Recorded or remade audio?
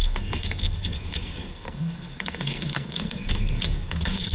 remade